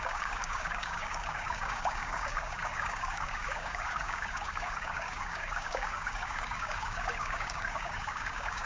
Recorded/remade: remade